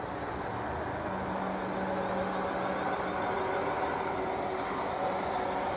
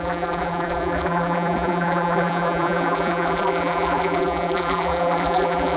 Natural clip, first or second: first